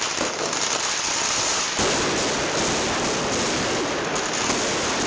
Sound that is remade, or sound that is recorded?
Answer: recorded